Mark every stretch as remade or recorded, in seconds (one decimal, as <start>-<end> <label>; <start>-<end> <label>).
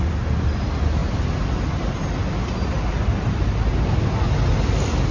0.0-5.1 recorded